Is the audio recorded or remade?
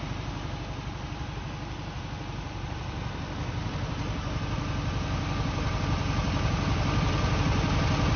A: recorded